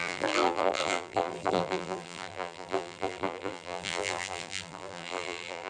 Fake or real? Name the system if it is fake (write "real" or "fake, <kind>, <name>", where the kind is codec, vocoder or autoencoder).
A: fake, vocoder, BigVGAN v2